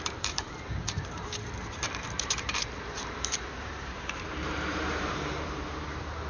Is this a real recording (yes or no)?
no